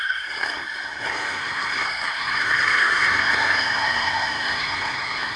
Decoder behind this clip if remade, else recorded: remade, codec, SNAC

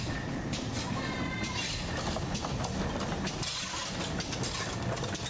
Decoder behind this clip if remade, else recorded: recorded